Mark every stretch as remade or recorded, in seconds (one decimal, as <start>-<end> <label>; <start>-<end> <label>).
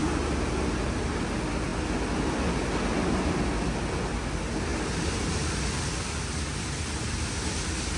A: 0.0-8.0 recorded